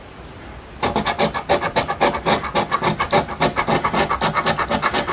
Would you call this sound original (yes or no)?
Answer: yes